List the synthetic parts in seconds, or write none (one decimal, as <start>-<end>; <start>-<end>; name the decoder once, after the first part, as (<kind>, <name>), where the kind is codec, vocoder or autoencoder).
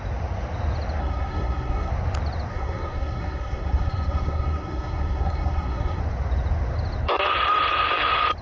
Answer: 1.0-1.9 (codec, SNAC); 2.5-6.0